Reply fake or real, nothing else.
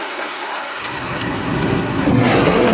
fake